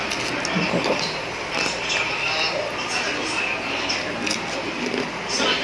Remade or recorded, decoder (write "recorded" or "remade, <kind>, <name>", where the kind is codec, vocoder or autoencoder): recorded